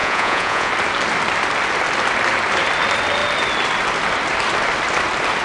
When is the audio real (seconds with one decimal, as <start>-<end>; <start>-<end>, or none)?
0.7-5.4